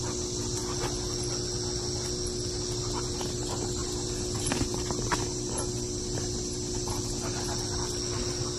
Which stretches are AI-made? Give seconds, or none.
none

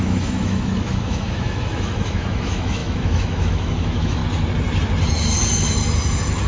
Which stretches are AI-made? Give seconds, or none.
0.0-4.2 (autoencoder, DAC-VAE)

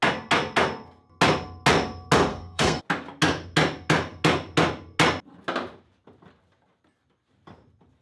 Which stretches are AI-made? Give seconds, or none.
2.3-2.8 (codec, SNAC)

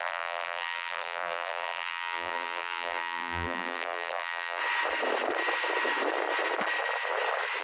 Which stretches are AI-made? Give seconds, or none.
0.0-4.6 (vocoder, BigVGAN v2)

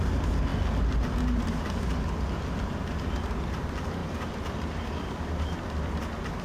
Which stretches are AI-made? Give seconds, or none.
4.0-6.4 (vocoder, BigVGAN v2)